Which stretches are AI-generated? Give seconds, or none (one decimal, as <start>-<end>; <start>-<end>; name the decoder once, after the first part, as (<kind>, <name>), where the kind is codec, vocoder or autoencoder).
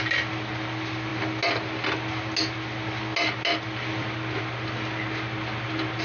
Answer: none